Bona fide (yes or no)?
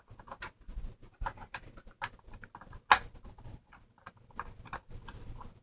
yes